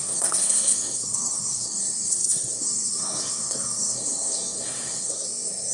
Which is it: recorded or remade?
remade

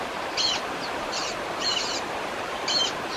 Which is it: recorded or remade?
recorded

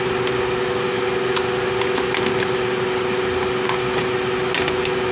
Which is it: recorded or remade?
recorded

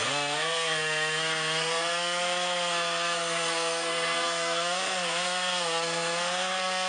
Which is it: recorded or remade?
remade